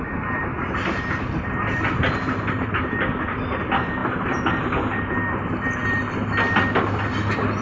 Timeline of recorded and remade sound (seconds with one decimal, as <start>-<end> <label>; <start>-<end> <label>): 0.0-7.6 recorded